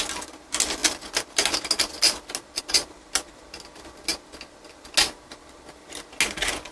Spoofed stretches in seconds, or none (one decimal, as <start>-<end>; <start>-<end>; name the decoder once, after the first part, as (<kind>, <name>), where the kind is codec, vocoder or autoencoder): none